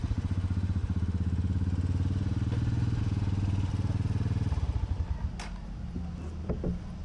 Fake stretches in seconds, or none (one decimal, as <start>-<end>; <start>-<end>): none